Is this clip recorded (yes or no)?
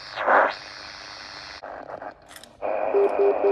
yes